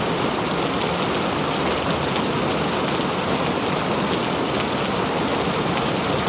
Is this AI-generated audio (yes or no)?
no